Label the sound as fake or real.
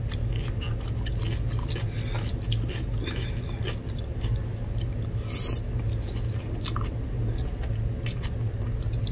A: real